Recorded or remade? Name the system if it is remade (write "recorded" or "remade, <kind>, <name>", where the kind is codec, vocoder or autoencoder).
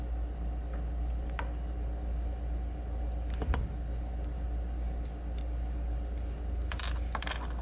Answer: recorded